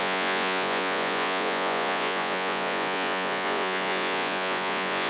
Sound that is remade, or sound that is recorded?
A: remade